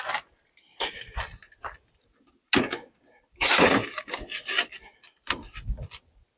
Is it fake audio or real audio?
real